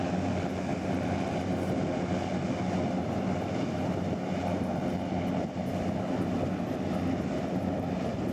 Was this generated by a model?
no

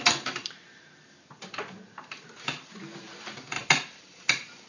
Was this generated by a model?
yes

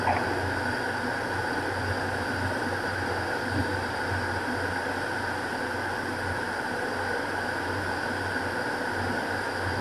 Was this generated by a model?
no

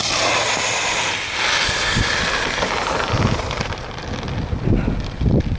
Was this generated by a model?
no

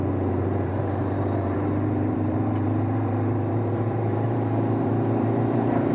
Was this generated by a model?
yes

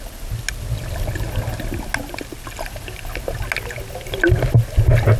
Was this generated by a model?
no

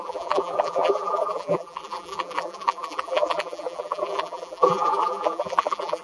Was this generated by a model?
yes